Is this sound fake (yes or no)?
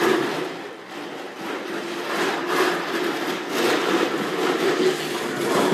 no